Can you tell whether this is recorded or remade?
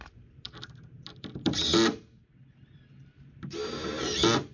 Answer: recorded